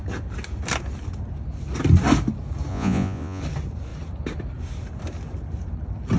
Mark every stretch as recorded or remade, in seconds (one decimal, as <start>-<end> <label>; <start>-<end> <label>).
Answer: 0.0-2.7 recorded; 2.7-3.4 remade; 3.4-6.2 recorded